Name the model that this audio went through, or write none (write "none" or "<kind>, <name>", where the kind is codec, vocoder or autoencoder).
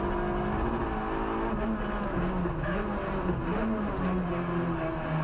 none